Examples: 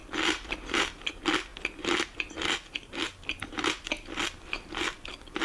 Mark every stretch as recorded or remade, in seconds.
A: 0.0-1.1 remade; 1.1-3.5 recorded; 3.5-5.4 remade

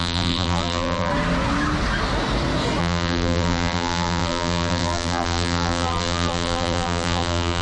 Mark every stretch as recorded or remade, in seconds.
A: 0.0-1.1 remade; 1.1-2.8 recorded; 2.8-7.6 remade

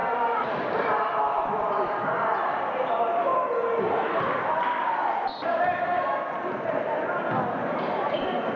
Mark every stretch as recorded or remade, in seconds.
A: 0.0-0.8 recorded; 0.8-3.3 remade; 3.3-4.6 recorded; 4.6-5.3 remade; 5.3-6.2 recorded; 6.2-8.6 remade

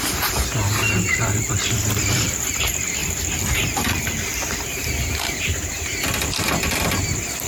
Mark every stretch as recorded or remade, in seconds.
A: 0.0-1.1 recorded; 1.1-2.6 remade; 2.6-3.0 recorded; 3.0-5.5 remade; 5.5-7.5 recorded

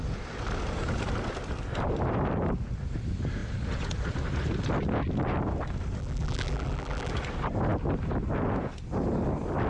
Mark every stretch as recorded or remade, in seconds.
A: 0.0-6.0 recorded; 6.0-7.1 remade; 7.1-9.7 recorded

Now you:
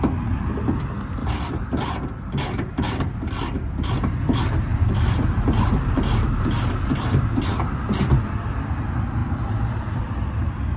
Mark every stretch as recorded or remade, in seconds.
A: 0.0-1.2 recorded; 1.2-2.7 remade; 2.7-4.7 recorded; 4.7-7.4 remade; 7.4-9.2 recorded; 9.2-10.0 remade; 10.0-10.8 recorded